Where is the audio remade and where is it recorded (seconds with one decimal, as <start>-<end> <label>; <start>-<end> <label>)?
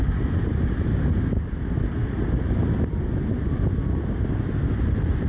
0.0-5.3 recorded